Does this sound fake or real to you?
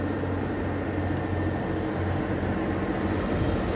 real